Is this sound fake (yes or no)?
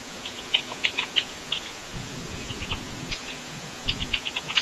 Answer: yes